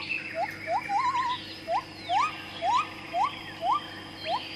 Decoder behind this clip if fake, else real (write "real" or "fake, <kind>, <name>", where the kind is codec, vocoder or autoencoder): real